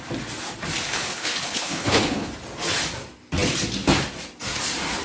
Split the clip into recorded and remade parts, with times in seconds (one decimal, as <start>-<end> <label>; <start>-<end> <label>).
0.0-0.8 recorded; 0.8-2.3 remade; 2.3-5.0 recorded